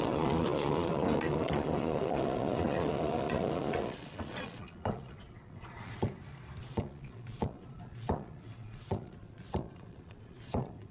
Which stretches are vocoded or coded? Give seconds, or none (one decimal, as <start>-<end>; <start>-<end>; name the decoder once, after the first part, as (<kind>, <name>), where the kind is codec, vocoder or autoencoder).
0.0-6.1 (vocoder, Vocos); 6.6-10.9

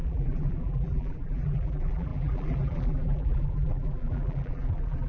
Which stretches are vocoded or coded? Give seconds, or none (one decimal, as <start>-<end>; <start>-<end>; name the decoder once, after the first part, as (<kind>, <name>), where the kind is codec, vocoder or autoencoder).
0.0-5.1 (vocoder, BigVGAN v2)

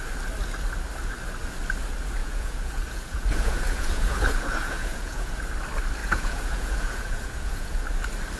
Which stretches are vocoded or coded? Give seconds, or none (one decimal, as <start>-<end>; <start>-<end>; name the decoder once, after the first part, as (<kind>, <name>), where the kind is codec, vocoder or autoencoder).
2.2-5.5 (vocoder, Vocos); 6.0-7.8

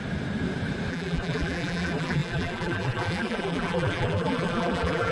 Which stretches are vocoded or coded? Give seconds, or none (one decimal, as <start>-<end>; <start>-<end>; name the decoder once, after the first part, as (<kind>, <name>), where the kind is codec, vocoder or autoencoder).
0.9-5.1 (vocoder, BigVGAN v2)

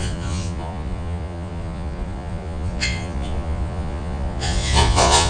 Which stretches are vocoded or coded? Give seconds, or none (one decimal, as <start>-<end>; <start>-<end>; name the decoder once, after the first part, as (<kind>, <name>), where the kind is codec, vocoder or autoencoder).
0.0-5.3 (vocoder, Vocos)

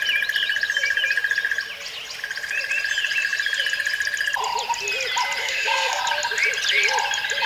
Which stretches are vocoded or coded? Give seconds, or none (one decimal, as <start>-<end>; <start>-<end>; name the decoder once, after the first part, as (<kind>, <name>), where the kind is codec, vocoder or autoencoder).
5.4-6.0 (codec, SNAC)

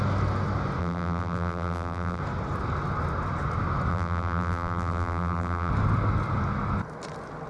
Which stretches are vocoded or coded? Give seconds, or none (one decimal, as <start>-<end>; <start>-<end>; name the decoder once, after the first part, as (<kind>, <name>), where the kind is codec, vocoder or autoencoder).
0.8-2.2 (vocoder, BigVGAN v2); 3.9-5.7

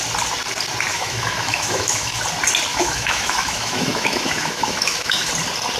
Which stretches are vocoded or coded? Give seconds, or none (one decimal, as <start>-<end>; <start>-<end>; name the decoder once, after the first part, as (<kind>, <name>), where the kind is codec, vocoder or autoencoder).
0.9-2.2 (autoencoder, DAC-VAE); 2.7-5.3